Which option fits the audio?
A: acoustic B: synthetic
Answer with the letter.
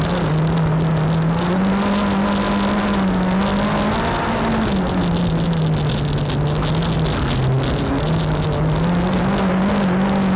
A